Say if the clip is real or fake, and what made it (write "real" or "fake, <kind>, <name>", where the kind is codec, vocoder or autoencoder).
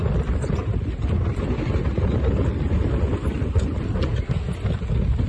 real